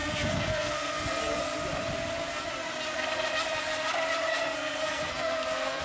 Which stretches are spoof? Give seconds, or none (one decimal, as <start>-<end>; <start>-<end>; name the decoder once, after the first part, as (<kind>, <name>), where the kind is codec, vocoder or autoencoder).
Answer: 0.0-1.4 (codec, SNAC); 4.3-5.8